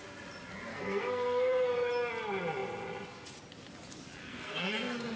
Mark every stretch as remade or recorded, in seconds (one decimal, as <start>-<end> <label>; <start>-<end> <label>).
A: 0.0-0.7 recorded; 0.7-1.9 remade; 1.9-4.2 recorded; 4.2-5.2 remade

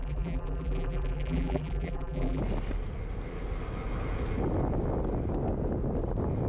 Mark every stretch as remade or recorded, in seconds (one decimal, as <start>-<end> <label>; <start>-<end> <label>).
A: 0.0-2.4 remade; 2.4-6.5 recorded

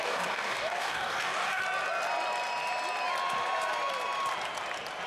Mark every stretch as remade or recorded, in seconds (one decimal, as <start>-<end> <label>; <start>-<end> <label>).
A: 0.0-1.6 remade; 1.6-5.1 recorded

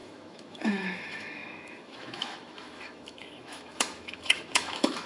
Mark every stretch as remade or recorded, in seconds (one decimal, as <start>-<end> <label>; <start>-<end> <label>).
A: 0.0-5.1 remade

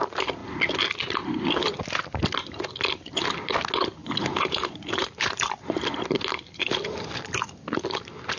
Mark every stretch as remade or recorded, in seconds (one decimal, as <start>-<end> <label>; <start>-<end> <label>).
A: 0.0-4.0 recorded; 4.0-5.7 remade; 5.7-8.4 recorded